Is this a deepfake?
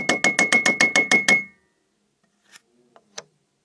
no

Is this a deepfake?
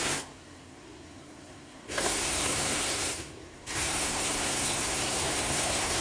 yes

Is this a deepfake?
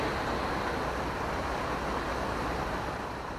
no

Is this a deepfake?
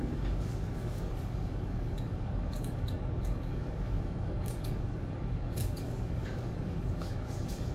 yes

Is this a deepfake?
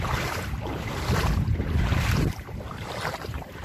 yes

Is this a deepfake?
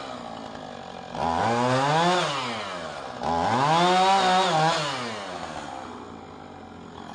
no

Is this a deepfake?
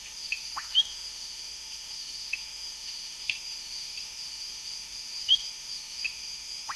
yes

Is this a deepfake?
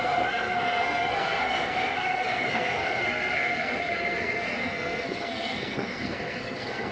yes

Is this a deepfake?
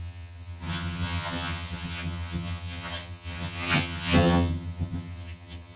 yes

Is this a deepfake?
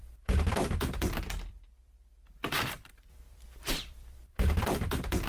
yes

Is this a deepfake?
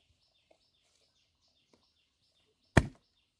no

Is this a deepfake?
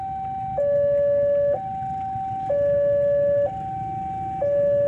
no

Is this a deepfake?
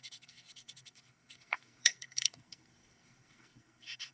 yes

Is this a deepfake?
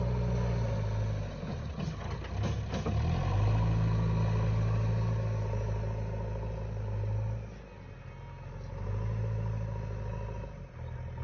no